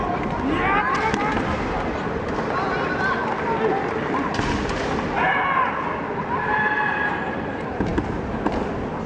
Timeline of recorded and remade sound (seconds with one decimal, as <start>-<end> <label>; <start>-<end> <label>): 0.0-9.1 recorded